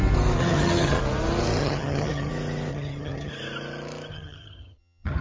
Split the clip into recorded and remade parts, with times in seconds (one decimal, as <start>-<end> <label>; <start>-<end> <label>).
0.0-0.4 recorded; 0.4-1.0 remade; 1.0-1.6 recorded; 1.6-2.3 remade; 2.3-2.7 recorded; 2.7-3.3 remade; 3.3-4.1 recorded; 4.1-5.2 remade